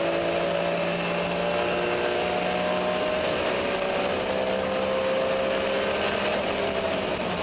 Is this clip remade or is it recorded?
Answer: recorded